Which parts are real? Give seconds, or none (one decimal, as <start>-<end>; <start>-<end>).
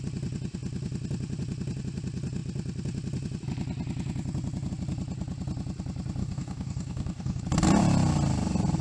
0.0-6.2; 7.4-8.8